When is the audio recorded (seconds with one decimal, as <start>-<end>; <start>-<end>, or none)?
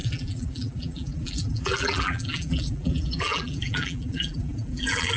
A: none